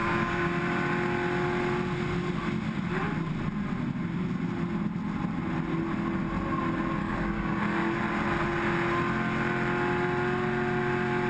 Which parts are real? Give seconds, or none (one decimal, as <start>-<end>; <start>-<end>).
0.5-7.0; 7.6-11.3